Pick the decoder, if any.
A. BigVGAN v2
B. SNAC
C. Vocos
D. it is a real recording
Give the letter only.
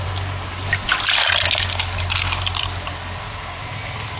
D